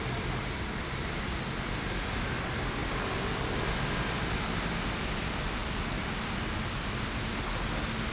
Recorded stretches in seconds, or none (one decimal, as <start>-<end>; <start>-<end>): 0.0-8.1